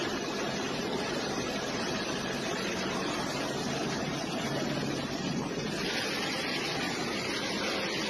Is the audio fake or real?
real